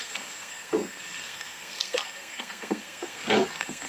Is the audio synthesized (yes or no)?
yes